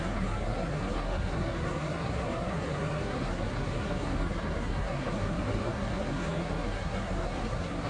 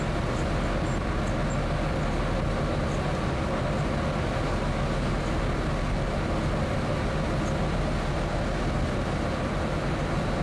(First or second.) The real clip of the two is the second